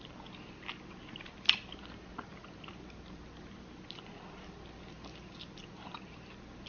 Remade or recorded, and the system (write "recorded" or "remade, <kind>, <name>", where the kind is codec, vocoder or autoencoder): recorded